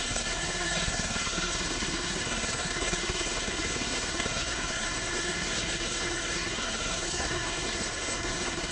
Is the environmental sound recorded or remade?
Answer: remade